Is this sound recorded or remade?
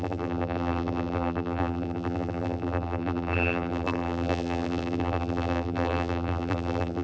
remade